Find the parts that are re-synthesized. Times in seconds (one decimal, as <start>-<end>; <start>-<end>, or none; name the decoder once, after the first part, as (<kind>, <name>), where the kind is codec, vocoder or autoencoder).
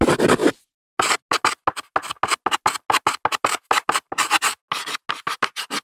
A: none